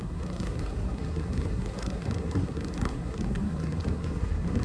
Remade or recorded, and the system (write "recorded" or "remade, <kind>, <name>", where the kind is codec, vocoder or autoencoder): remade, codec, SNAC